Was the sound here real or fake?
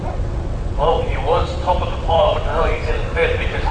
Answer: fake